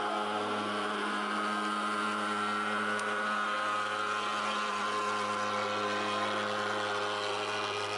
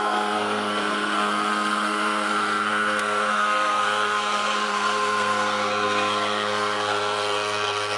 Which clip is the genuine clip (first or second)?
first